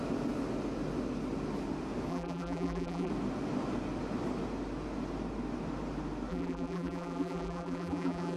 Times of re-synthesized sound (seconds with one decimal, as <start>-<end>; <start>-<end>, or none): 2.1-3.1; 6.3-8.4